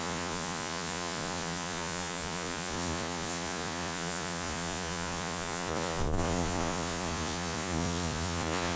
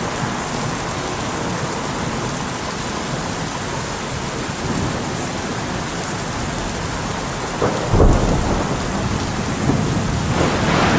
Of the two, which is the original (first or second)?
second